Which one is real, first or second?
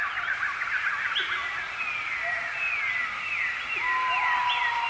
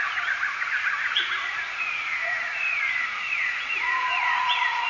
first